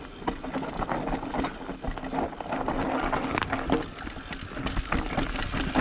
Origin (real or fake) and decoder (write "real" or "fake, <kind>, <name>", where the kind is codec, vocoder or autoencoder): real